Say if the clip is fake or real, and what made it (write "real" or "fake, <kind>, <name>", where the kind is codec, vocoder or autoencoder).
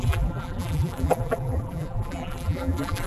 fake, vocoder, BigVGAN v2